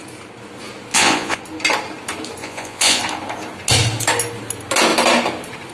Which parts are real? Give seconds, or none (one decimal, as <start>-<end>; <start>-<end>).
0.0-0.9; 1.4-2.4; 3.0-5.7